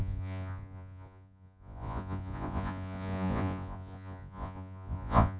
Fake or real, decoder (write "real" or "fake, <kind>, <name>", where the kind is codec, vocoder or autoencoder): fake, vocoder, Vocos